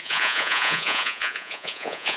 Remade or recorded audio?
remade